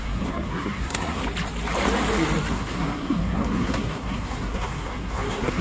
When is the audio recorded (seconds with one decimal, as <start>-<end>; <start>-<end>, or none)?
1.2-2.5